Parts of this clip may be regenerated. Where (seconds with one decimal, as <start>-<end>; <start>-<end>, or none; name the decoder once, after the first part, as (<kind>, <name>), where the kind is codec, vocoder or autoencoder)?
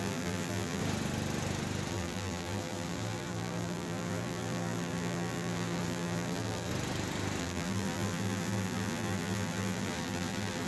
0.0-0.8 (vocoder, BigVGAN v2); 1.9-6.7; 7.4-10.7